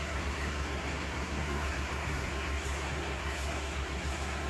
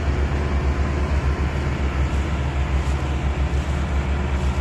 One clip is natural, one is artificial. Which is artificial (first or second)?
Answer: first